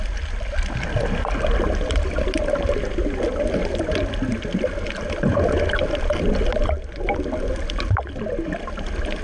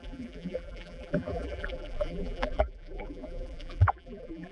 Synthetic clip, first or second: second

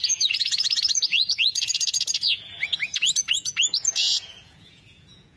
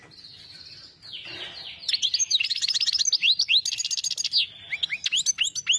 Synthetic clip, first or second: first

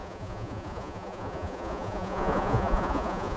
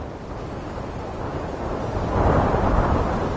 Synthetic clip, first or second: first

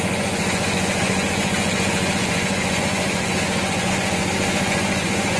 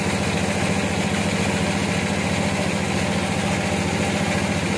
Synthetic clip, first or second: first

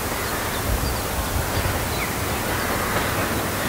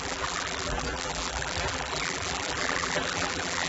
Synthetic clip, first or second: second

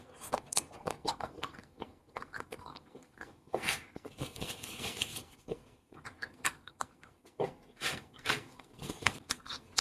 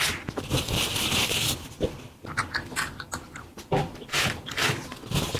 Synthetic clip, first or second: first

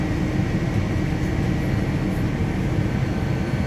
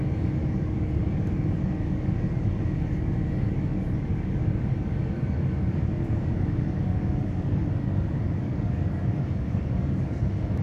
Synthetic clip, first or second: second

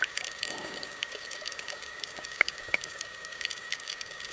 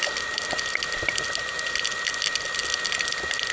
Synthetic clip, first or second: first